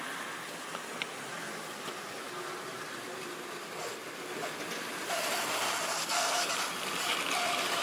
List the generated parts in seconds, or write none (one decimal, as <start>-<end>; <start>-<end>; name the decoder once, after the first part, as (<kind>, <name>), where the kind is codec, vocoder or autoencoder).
6.0-6.5 (codec, SNAC)